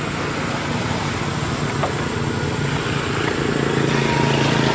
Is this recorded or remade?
recorded